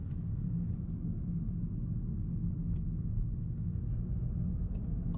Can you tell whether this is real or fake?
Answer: real